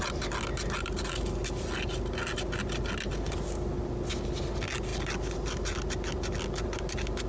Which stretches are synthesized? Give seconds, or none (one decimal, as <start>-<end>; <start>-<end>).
none